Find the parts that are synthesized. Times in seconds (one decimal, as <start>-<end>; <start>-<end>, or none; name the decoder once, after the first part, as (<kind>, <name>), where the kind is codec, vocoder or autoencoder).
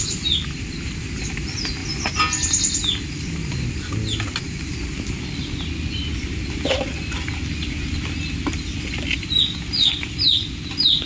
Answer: none